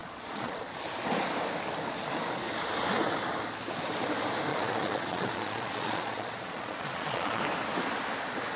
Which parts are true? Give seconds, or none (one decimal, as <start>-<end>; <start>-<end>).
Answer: 0.6-4.5; 7.4-8.6